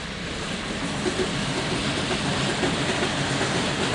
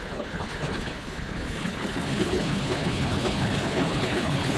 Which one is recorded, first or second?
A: first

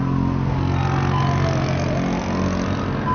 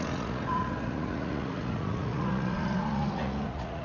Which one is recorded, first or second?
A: first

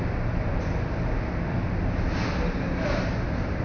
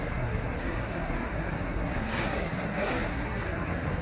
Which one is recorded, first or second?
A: first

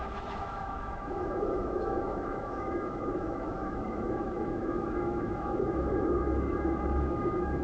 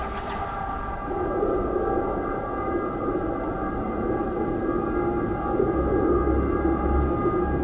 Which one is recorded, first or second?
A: second